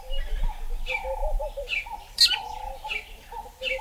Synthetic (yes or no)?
no